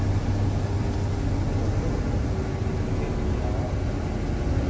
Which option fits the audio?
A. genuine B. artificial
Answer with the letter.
A